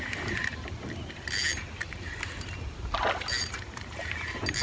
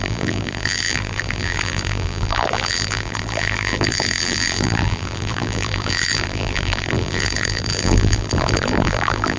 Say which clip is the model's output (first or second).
second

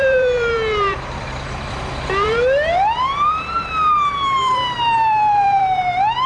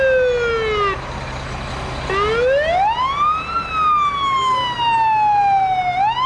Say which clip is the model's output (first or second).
first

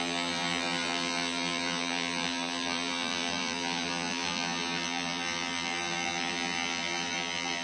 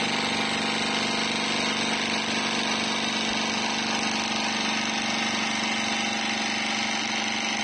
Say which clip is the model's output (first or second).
first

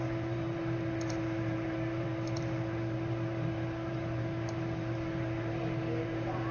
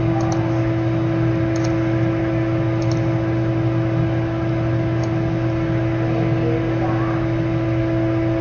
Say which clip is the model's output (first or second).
first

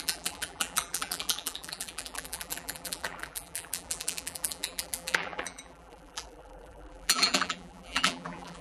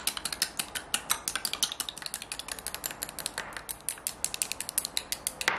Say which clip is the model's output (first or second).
first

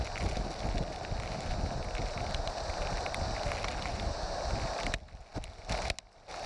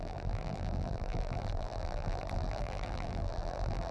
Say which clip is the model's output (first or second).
second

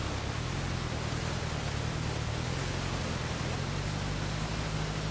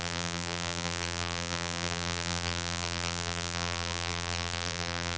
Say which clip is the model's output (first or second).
second